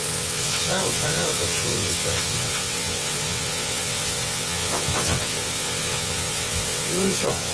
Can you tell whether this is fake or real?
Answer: fake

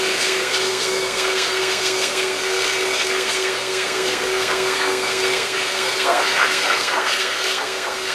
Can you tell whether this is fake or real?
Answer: fake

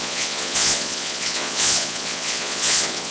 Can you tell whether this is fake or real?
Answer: fake